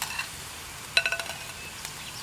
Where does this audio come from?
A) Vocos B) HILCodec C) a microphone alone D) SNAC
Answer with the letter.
C